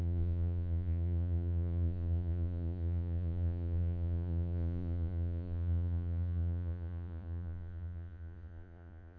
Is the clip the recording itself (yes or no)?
no